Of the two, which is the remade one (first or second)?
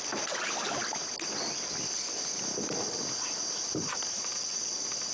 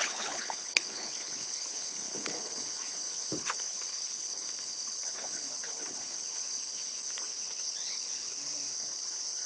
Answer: second